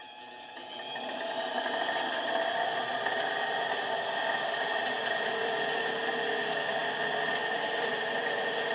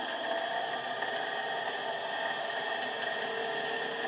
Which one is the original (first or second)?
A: second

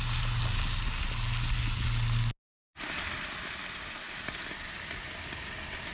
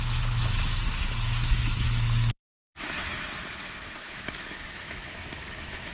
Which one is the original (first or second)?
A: first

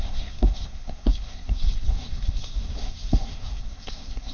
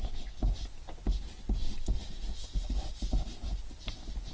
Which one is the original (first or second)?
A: second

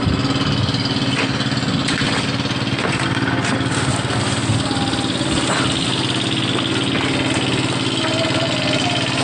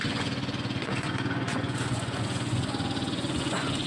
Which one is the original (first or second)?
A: first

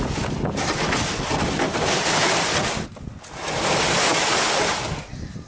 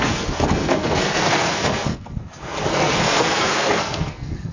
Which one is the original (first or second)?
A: first